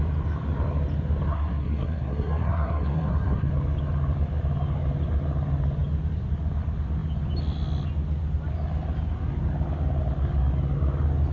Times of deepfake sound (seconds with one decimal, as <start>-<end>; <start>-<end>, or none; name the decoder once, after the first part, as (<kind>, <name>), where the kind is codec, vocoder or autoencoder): 1.3-3.5 (codec, SNAC)